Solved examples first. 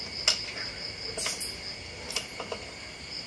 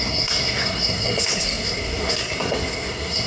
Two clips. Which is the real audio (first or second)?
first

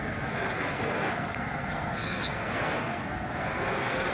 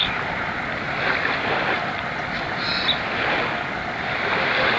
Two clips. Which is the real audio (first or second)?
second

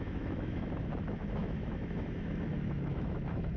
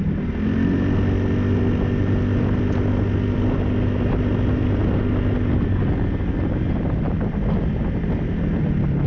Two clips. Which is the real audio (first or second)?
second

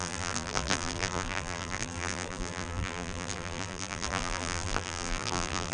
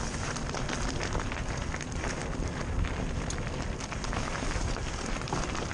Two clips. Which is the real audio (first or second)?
second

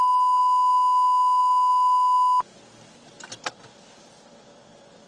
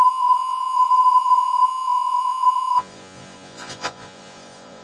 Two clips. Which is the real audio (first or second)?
first